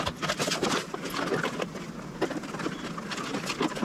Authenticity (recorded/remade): recorded